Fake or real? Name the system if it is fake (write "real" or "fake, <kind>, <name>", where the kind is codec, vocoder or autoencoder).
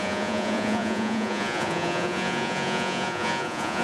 fake, vocoder, Vocos